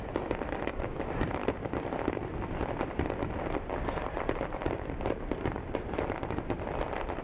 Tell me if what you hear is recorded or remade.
remade